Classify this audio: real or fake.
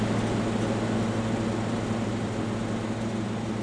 real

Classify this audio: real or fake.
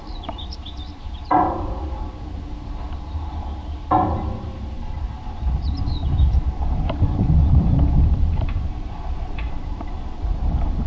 fake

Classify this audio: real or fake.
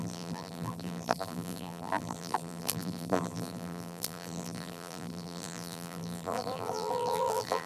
fake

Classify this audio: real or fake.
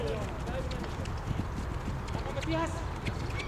real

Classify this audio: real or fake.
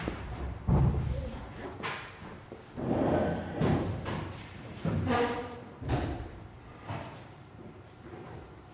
fake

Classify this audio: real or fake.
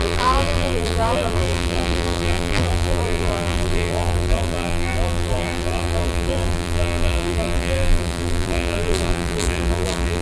fake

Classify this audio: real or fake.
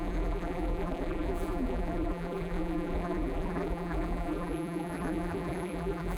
fake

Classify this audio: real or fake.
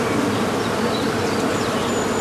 real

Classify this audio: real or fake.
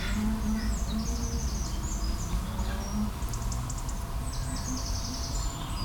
real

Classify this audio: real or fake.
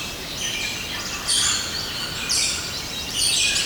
real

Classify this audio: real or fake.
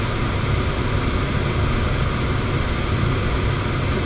real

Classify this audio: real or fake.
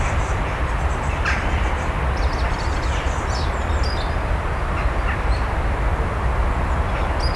real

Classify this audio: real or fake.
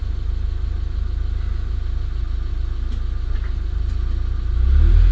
real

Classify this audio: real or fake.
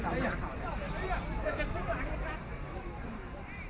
fake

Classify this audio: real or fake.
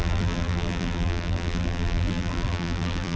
fake